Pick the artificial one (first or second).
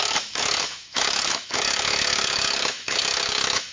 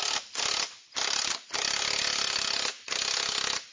first